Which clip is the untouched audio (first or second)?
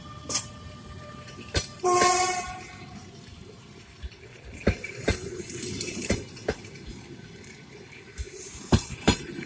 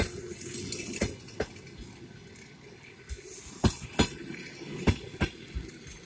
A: second